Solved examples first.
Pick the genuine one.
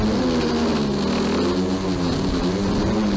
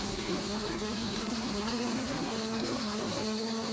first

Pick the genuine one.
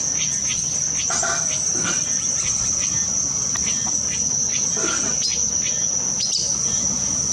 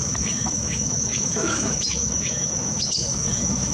first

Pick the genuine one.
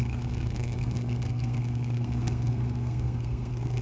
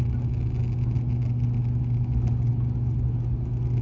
second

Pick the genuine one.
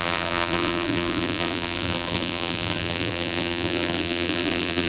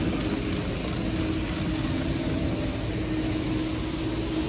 second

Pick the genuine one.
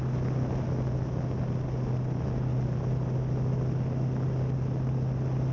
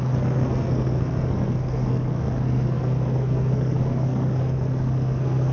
first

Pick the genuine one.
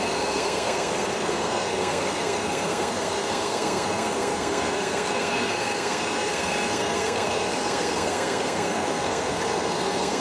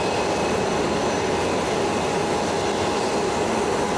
second